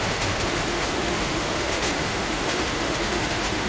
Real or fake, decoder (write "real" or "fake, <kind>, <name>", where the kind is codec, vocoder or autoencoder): fake, autoencoder, DAC-VAE